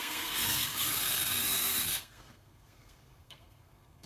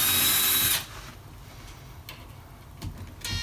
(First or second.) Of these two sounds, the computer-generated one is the first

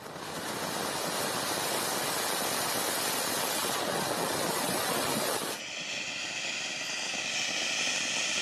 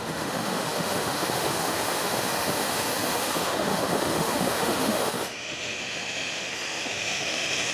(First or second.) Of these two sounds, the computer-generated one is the second